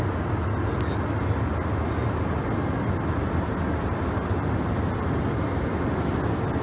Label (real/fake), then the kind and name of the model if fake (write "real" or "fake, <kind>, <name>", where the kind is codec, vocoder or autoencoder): real